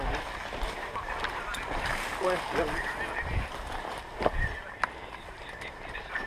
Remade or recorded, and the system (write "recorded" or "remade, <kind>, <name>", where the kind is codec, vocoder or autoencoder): remade, vocoder, BigVGAN v2